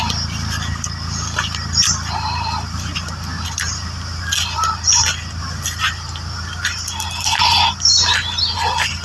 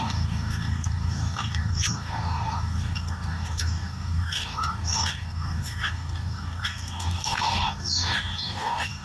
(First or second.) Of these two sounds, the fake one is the second